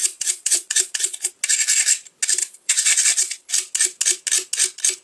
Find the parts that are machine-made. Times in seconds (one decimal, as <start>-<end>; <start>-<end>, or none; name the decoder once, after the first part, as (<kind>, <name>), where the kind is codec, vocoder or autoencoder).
0.0-1.3 (vocoder, WaveNeXt); 2.4-3.5